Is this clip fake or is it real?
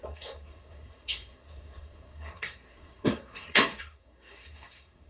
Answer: fake